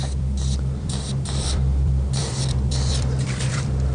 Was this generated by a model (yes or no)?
yes